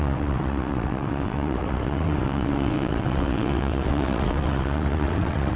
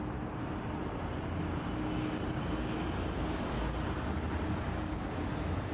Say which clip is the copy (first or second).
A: first